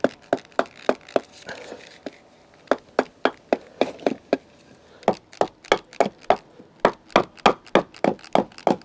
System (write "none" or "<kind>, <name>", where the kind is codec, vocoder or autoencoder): none